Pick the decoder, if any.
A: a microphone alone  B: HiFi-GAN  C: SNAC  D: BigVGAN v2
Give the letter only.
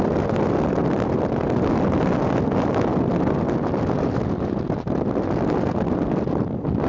A